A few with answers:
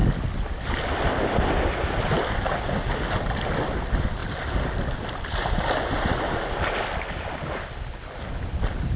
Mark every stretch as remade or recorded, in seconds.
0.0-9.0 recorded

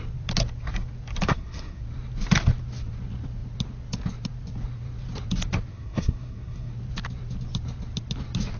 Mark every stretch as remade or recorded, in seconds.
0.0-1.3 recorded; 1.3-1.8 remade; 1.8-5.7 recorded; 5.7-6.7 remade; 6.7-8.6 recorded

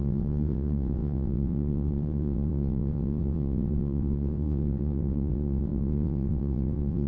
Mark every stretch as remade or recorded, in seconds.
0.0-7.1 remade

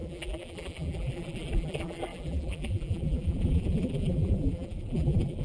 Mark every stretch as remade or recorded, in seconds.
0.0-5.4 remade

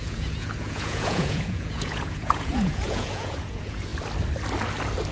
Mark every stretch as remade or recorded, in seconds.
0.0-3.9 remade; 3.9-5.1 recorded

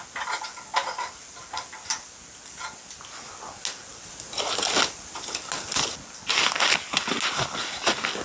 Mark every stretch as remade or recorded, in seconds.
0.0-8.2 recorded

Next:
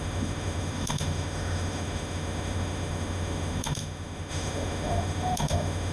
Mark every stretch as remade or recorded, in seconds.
0.0-5.9 remade

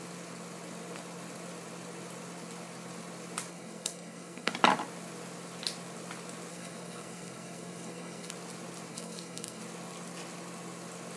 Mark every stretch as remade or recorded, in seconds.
0.0-3.5 recorded; 3.5-4.5 remade; 4.5-6.5 recorded; 6.5-8.3 remade; 8.3-8.9 recorded; 8.9-9.6 remade; 9.6-11.2 recorded